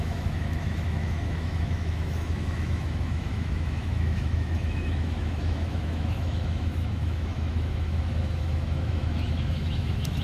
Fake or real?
fake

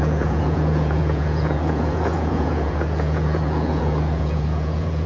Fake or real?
fake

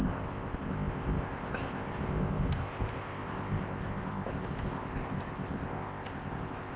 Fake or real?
fake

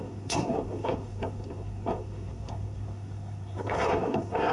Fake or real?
fake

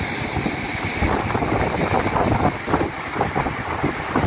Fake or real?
real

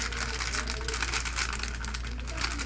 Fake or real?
real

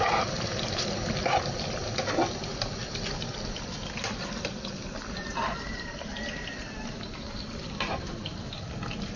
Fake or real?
real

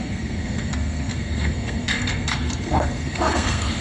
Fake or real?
fake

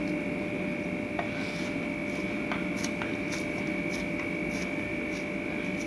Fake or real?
real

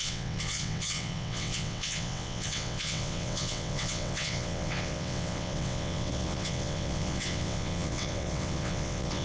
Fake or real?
fake